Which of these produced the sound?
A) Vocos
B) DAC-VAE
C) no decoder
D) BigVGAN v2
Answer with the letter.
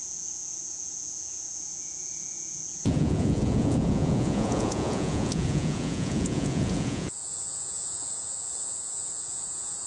A